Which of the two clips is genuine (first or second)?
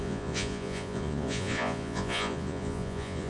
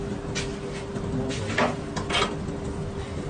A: second